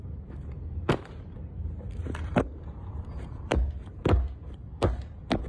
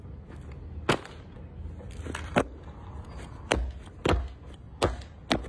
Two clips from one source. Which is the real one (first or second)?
second